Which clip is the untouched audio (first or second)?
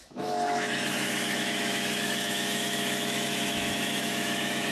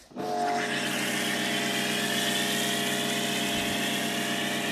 second